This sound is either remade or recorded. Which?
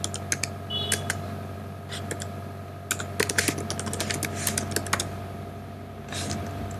recorded